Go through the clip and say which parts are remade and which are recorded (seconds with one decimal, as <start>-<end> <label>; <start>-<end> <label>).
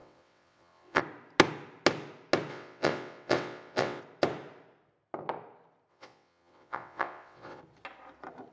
0.0-1.0 remade; 1.0-2.5 recorded; 2.5-4.0 remade; 4.0-5.9 recorded; 5.9-7.6 remade; 7.6-8.5 recorded